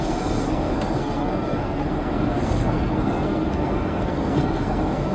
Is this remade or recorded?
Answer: remade